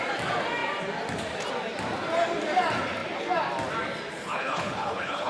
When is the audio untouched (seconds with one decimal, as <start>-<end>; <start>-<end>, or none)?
0.0-4.2